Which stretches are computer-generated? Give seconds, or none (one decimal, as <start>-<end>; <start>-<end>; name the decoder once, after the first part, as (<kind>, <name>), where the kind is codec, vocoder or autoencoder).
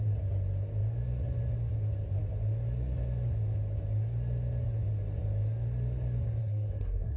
6.4-7.2 (codec, SNAC)